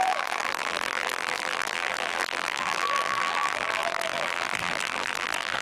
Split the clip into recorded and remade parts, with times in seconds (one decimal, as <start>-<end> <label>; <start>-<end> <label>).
0.0-5.6 remade